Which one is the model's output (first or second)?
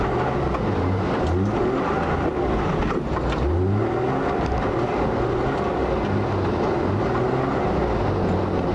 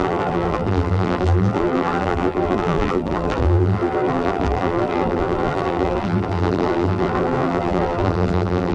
second